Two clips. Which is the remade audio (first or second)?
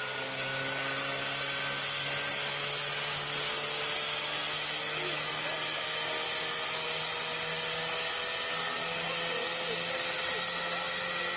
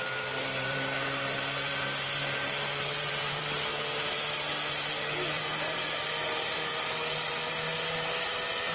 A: second